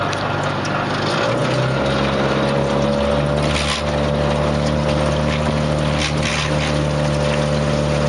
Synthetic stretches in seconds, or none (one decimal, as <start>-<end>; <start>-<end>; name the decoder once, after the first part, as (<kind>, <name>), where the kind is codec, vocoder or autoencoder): none